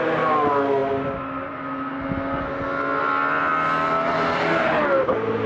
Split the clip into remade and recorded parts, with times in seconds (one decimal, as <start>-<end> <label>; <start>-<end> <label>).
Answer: 0.0-5.5 recorded